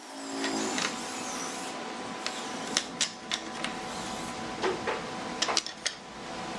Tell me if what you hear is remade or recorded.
recorded